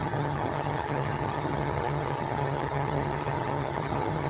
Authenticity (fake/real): fake